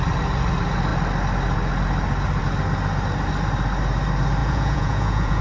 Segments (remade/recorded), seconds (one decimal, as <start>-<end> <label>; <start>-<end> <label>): 0.0-4.4 recorded; 4.4-5.4 remade